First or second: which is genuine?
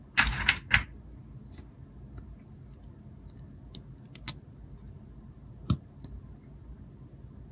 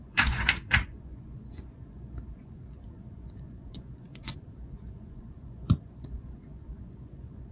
first